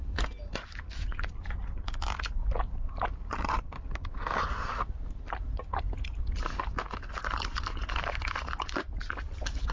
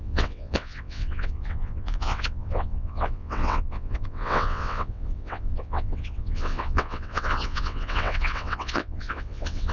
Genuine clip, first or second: first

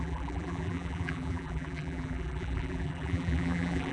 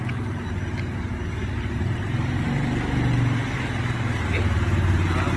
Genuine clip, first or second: second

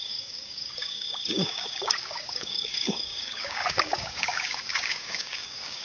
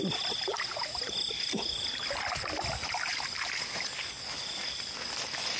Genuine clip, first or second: second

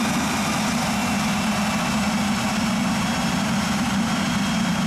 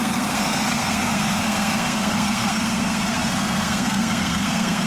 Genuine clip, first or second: first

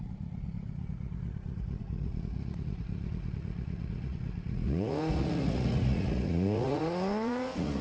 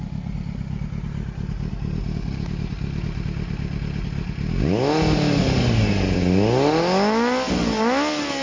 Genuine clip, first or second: second